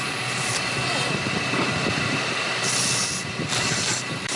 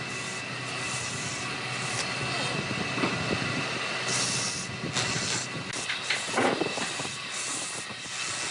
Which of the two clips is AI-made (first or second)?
first